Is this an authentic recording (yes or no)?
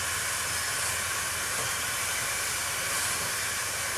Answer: yes